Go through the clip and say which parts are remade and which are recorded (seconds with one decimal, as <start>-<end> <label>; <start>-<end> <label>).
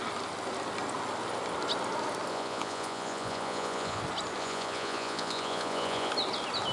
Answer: 0.0-2.3 recorded; 2.3-4.0 remade; 4.0-4.4 recorded; 4.4-6.1 remade; 6.1-6.7 recorded